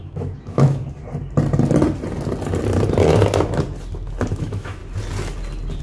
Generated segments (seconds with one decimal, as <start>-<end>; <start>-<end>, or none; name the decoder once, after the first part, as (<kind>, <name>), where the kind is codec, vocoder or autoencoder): 0.0-0.8 (autoencoder, DAC-VAE); 4.3-4.8